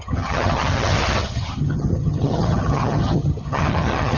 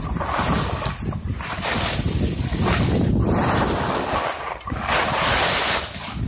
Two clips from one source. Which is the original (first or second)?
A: second